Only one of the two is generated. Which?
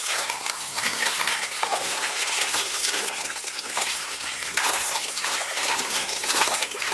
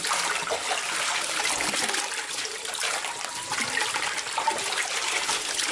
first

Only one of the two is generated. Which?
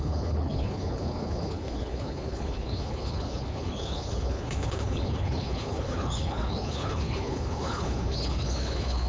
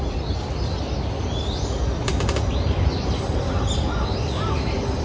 first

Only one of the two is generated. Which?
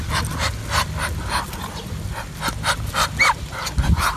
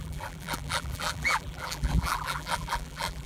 second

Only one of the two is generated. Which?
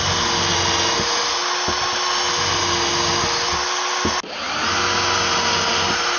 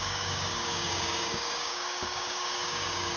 second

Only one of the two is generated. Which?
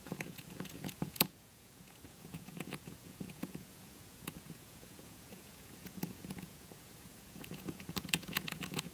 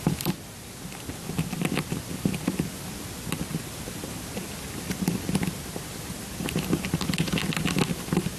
first